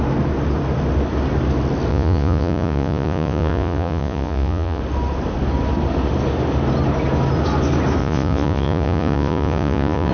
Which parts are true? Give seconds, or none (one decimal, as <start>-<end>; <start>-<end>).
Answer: 0.0-1.9; 4.8-8.0